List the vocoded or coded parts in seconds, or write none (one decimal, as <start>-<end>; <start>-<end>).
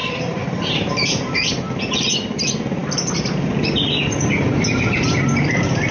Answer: none